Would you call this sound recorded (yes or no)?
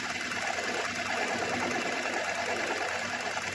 yes